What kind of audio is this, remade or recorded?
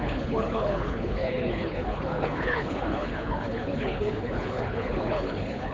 remade